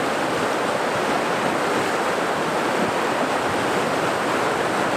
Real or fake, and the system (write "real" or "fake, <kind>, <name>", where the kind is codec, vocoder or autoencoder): real